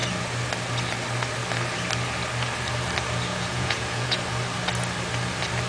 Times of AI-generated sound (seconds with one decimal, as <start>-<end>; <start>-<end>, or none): 3.3-4.2